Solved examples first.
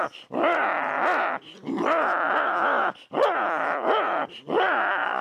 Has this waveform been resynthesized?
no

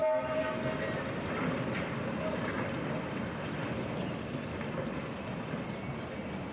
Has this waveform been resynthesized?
no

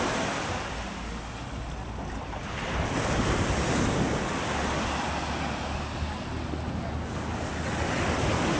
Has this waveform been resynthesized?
no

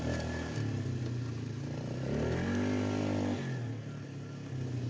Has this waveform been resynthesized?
no